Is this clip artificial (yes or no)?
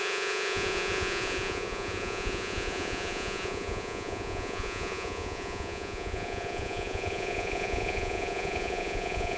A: yes